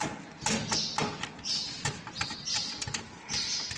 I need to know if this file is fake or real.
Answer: real